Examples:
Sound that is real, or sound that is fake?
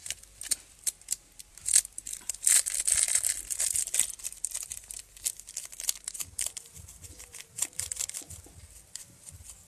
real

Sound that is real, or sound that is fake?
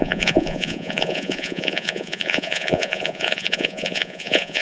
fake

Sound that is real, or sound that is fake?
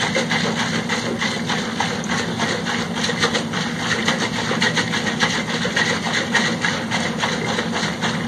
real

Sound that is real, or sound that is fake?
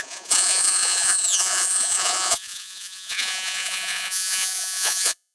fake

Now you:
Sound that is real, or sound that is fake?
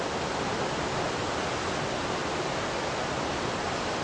real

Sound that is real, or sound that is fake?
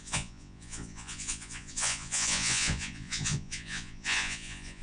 fake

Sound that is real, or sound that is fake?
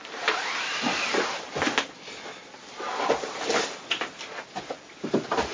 real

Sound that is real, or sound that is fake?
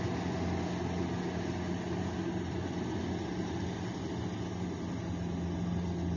real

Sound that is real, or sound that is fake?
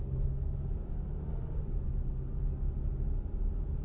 real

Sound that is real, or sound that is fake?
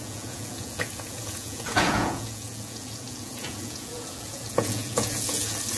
fake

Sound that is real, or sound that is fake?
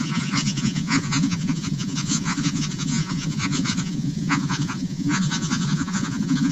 fake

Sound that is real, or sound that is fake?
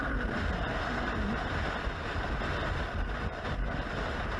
real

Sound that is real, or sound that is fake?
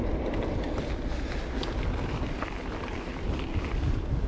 real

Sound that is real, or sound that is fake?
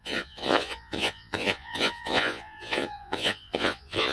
fake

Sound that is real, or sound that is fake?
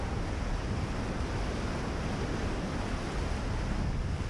real